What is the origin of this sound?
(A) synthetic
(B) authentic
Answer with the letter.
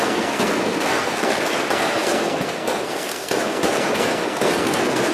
A